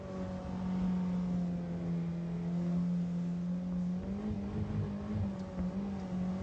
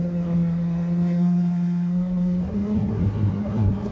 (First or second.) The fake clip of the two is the second